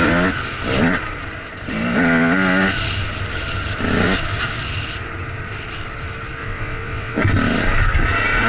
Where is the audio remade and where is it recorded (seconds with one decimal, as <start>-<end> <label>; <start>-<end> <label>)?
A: 0.0-6.4 recorded; 6.4-7.2 remade; 7.2-8.5 recorded